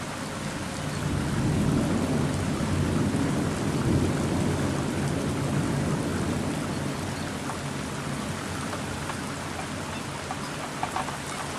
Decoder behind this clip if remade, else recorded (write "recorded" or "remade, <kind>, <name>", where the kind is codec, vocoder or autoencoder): recorded